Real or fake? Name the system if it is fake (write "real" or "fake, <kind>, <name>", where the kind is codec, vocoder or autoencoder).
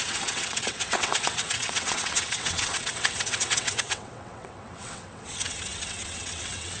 fake, vocoder, WaveNeXt